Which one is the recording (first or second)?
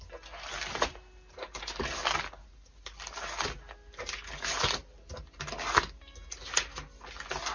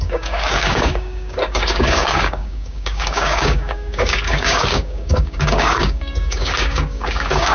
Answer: first